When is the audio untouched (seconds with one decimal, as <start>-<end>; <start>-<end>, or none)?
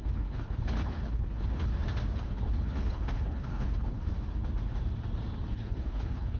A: 1.7-2.2; 4.1-5.5